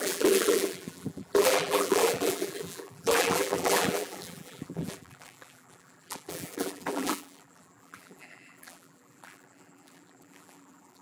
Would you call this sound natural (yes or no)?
no